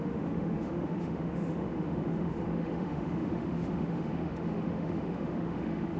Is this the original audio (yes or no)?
no